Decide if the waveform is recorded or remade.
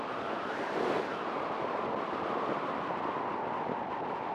recorded